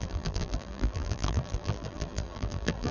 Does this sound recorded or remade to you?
remade